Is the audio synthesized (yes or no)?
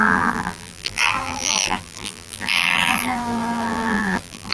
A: yes